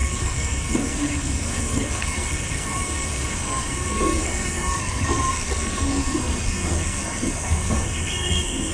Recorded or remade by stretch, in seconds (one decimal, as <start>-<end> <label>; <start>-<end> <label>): 0.0-8.7 remade